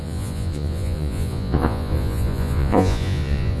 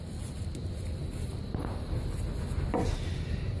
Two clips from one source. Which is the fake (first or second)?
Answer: first